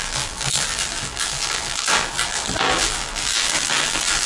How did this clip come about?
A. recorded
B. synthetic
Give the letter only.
B